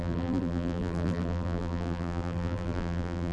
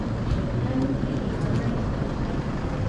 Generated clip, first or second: first